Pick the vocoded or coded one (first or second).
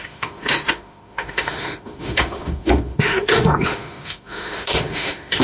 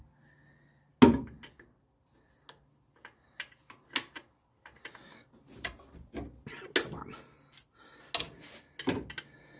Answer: first